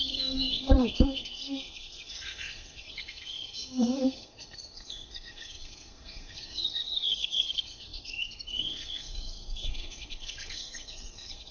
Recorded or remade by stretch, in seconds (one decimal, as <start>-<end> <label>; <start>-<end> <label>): 0.0-11.5 remade